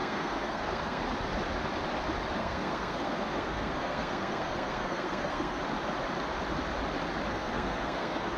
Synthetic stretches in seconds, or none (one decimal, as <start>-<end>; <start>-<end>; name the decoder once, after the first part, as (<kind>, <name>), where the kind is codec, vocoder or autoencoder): 0.0-1.0 (codec, SNAC); 2.4-5.6; 7.3-8.4